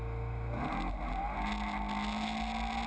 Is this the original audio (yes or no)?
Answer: yes